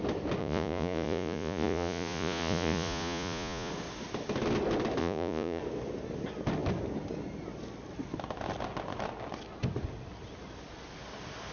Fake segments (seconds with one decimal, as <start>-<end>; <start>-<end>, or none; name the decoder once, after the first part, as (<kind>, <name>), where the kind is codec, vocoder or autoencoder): 0.4-3.7 (vocoder, Vocos); 5.0-5.6